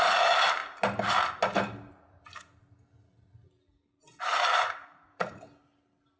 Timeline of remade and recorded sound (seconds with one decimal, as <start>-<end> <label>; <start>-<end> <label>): 0.0-4.8 recorded; 4.8-5.4 remade; 5.4-6.2 recorded